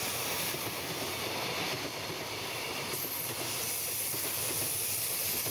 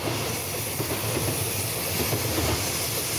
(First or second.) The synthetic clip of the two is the first